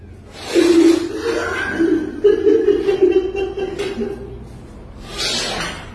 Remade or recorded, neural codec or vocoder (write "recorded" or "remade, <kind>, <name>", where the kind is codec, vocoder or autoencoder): recorded